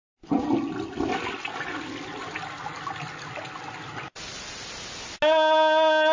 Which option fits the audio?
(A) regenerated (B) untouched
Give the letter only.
B